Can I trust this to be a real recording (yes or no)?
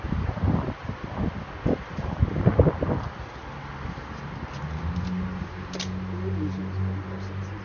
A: yes